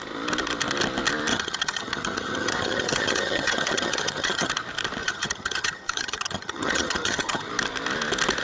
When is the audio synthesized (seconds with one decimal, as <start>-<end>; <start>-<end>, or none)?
1.3-4.5; 5.0-7.5